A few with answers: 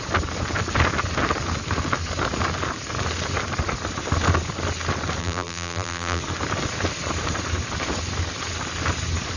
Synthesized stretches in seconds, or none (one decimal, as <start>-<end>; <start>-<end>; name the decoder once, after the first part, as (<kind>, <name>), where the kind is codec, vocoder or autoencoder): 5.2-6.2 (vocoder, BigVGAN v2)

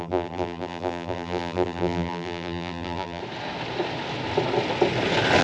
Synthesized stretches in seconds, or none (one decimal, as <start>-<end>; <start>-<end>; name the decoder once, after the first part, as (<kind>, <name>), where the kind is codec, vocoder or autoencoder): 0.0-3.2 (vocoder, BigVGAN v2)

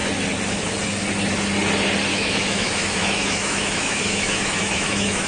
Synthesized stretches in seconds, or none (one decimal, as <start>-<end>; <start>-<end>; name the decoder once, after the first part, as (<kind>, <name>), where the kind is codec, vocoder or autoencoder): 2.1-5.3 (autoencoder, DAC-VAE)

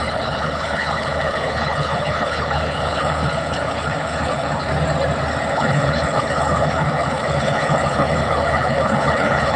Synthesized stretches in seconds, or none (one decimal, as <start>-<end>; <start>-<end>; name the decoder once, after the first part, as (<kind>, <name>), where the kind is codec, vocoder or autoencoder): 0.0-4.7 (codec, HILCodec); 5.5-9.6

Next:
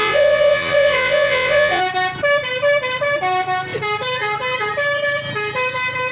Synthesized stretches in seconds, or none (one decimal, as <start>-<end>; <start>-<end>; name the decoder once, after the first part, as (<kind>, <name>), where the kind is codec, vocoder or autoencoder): 0.0-1.8 (vocoder, Vocos)

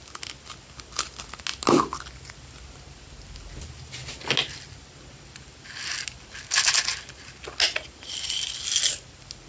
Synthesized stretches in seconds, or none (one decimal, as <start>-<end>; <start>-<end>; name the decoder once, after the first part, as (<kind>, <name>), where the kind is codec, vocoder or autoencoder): none